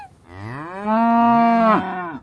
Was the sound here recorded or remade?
recorded